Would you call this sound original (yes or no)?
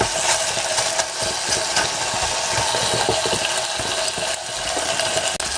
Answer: yes